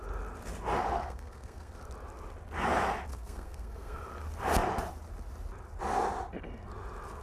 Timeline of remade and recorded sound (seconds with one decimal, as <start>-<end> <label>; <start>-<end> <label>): 0.0-1.0 recorded; 1.0-1.7 remade; 1.7-3.1 recorded; 3.1-4.0 remade; 4.0-7.2 recorded